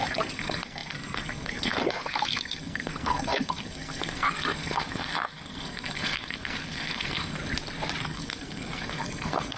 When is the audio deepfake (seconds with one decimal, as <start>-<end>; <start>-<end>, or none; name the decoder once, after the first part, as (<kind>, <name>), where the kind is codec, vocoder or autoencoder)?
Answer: 0.0-7.4 (codec, SNAC); 8.0-9.6